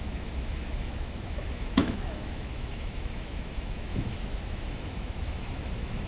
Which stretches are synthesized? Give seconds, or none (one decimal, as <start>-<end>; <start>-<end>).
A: 0.0-6.1